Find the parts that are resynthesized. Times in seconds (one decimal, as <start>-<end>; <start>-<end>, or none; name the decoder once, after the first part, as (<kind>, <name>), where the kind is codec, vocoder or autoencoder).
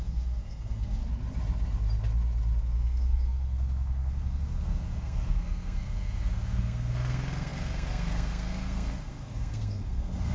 0.0-1.0 (codec, SNAC); 2.6-10.3